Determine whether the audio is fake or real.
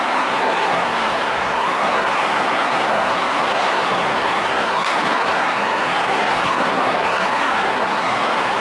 fake